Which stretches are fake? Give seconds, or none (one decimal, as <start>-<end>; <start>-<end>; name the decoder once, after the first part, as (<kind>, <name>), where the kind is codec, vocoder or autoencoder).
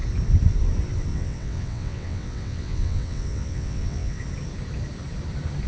1.1-4.2 (vocoder, WaveNeXt)